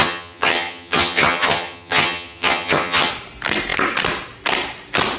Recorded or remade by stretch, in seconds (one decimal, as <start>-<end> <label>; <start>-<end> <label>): 0.0-3.1 remade; 3.1-5.2 recorded

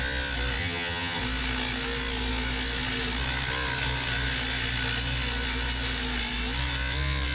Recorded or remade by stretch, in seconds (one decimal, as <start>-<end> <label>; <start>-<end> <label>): 0.0-0.6 recorded; 0.6-1.2 remade; 1.2-7.3 recorded

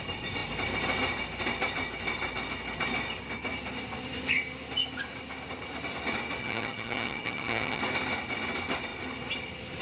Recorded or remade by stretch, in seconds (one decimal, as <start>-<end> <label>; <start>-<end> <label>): 0.0-6.4 recorded; 6.4-7.8 remade; 7.8-9.8 recorded